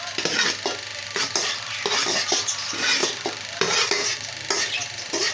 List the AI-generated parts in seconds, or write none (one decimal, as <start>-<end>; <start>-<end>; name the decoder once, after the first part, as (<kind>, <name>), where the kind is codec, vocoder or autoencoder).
0.9-1.7 (vocoder, BigVGAN v2); 3.0-4.5